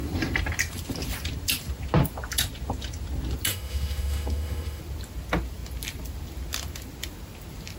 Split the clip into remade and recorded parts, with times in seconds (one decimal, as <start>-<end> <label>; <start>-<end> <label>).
0.0-3.5 recorded; 3.5-4.8 remade; 4.8-7.8 recorded